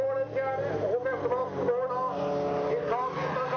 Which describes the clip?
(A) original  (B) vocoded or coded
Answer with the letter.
A